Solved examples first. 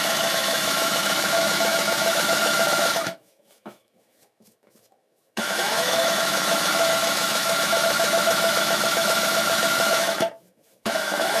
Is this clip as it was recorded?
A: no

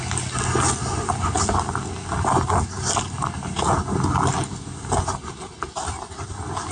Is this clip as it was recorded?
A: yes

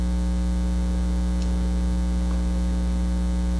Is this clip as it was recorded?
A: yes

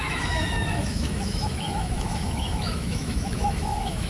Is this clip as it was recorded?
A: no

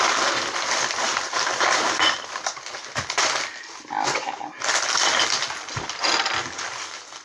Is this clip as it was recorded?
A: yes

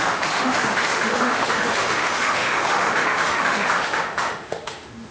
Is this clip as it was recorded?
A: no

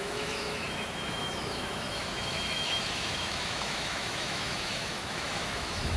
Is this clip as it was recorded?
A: no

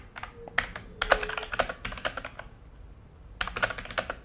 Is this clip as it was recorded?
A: yes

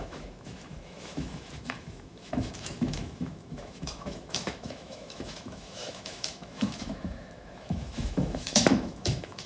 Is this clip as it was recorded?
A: no